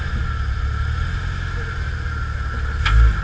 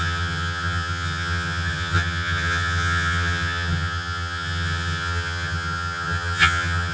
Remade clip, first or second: second